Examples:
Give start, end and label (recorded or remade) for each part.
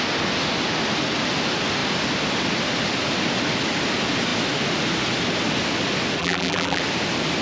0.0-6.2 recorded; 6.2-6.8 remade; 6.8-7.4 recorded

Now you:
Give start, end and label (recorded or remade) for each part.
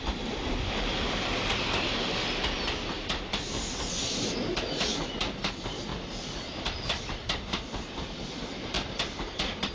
0.0-9.7 recorded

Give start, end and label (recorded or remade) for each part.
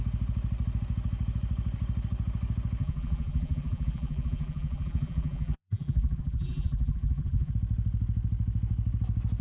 0.0-2.8 recorded; 2.8-7.5 remade; 7.5-9.4 recorded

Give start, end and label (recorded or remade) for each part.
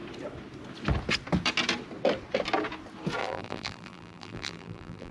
0.0-3.2 recorded; 3.2-5.1 remade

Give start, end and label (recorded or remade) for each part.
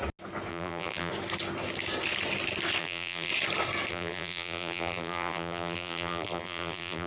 0.0-0.5 recorded; 0.5-1.1 remade; 1.1-2.8 recorded; 2.8-3.3 remade; 3.3-3.9 recorded; 3.9-7.1 remade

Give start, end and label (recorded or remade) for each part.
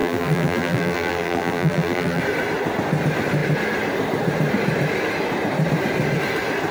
0.0-2.2 remade; 2.2-6.7 recorded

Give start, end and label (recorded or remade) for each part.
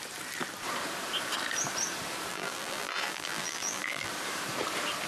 0.0-2.3 recorded; 2.3-4.1 remade; 4.1-5.1 recorded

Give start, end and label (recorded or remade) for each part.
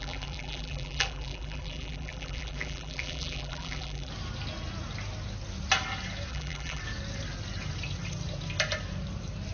0.0-4.1 remade; 4.1-6.3 recorded; 6.3-6.8 remade; 6.8-9.5 recorded